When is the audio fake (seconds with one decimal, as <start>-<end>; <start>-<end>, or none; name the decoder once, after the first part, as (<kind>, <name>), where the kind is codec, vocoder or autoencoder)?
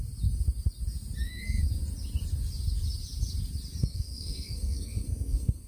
1.2-1.6 (codec, SNAC); 3.8-5.7